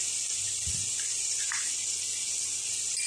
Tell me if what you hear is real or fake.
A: real